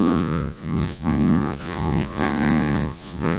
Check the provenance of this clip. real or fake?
fake